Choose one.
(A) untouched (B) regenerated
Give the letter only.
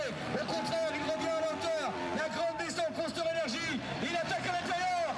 A